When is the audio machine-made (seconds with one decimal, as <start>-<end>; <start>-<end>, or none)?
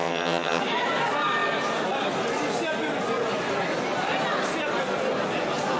0.0-0.6